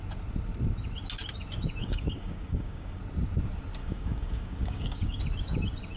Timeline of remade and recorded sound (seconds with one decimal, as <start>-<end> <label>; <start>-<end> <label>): 0.0-1.8 recorded; 1.8-3.0 remade; 3.0-3.8 recorded; 3.8-5.2 remade; 5.2-6.0 recorded